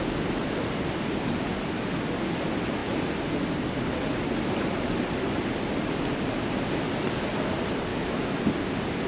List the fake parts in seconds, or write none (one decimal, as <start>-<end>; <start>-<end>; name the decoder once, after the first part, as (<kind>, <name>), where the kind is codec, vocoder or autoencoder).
7.9-8.4 (autoencoder, DAC-VAE)